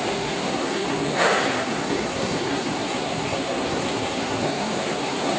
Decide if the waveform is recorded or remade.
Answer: remade